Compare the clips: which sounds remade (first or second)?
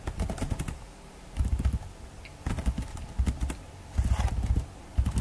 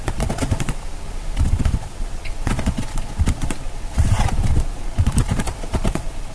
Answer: second